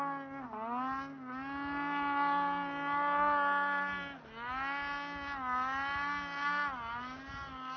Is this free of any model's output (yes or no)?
yes